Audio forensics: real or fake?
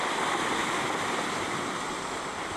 real